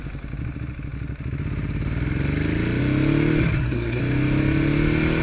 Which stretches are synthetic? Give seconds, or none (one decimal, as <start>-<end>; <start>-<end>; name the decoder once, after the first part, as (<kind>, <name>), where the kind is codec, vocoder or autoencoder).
3.4-4.0 (codec, SNAC)